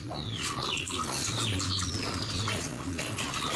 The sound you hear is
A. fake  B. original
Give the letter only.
A